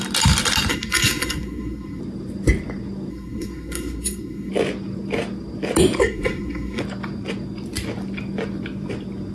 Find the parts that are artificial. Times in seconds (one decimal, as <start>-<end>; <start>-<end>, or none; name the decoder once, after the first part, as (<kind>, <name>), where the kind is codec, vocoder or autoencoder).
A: 0.7-2.0 (codec, SNAC); 3.1-4.5; 6.0-6.8